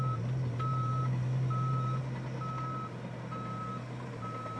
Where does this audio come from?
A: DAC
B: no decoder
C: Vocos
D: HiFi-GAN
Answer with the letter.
B